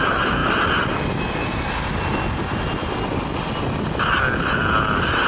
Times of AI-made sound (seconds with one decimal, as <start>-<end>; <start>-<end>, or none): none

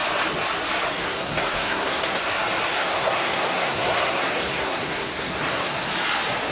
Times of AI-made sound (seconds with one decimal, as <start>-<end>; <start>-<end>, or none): 1.0-2.2; 2.7-5.8

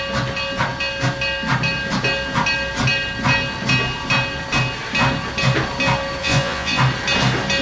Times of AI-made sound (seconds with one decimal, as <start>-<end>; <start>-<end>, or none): 6.2-6.8

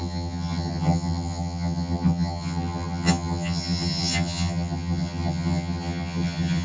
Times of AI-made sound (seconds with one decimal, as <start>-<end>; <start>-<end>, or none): 0.0-6.6

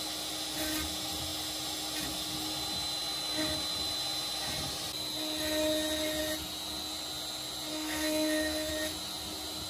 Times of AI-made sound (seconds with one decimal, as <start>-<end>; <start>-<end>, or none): 7.7-8.7